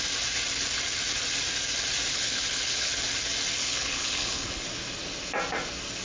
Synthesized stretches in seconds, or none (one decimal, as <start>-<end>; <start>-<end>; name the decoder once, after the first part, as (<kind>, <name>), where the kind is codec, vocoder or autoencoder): 2.1-2.9 (codec, HILCodec); 3.6-4.6